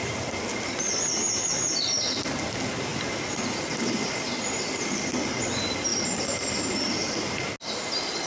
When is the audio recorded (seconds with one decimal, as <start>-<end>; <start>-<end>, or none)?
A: 0.0-8.3